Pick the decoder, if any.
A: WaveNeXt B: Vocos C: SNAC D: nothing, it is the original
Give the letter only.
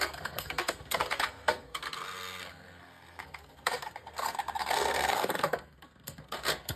C